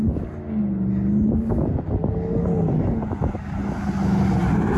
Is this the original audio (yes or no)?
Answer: yes